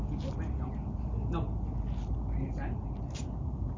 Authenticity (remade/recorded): recorded